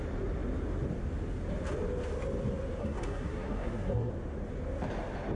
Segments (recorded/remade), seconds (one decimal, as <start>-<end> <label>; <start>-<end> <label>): 0.0-2.8 recorded; 2.8-4.1 remade; 4.1-5.4 recorded